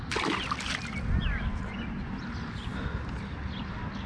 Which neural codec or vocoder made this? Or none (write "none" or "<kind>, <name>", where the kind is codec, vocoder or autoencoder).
none